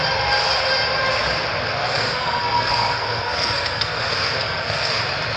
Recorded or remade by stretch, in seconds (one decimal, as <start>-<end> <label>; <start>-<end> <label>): 0.0-1.8 recorded; 1.8-5.0 remade; 5.0-5.4 recorded